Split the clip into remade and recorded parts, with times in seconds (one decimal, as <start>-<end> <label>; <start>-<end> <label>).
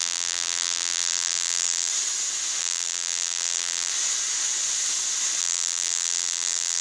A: 0.0-1.9 remade; 1.9-2.6 recorded; 2.6-3.9 remade; 3.9-5.4 recorded; 5.4-6.8 remade